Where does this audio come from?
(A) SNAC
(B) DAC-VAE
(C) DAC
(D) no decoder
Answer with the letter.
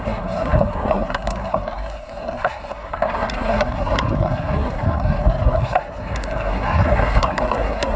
A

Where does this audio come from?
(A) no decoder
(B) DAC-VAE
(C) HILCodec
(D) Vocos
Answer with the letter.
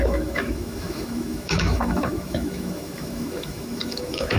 B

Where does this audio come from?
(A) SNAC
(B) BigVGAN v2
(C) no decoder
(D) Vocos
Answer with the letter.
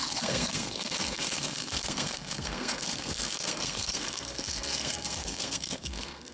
A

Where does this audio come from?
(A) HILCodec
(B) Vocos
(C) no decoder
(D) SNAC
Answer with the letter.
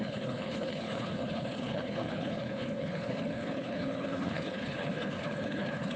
A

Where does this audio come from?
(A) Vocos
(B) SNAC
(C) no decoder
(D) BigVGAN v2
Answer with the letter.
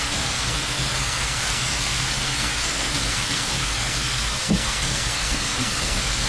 B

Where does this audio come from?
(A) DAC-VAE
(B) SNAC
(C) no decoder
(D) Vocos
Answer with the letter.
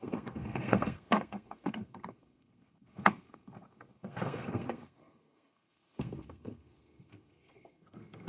B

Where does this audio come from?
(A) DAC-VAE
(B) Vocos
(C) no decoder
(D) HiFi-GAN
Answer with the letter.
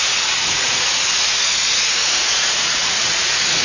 B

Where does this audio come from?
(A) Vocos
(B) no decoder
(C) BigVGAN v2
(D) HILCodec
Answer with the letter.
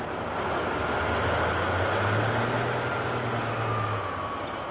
B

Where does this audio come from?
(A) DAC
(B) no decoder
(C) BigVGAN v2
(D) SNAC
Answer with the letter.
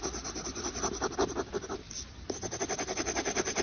B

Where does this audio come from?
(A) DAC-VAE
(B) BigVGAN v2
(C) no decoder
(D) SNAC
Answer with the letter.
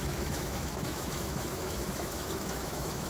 A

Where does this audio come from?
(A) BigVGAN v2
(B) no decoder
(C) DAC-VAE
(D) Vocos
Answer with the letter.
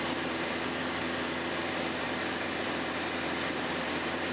A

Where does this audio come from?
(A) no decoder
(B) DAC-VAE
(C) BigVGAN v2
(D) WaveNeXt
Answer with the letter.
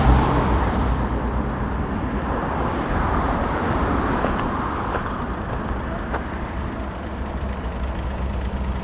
C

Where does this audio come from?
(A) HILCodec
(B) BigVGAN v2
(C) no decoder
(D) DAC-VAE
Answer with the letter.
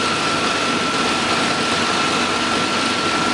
B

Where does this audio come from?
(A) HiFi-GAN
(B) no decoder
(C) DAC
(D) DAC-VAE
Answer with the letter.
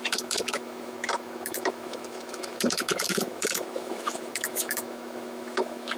D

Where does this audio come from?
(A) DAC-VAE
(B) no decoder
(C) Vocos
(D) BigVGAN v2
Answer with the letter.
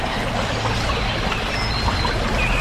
B